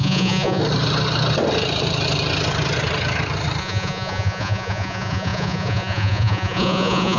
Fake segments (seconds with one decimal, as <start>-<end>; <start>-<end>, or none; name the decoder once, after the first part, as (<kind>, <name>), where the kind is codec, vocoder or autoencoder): 0.0-0.6 (vocoder, Vocos); 3.6-7.2